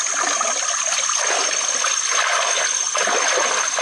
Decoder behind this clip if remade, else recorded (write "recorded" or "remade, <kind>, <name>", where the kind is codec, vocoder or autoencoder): recorded